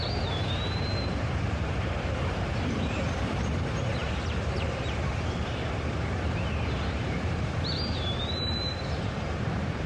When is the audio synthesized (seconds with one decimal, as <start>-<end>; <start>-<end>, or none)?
0.0-9.9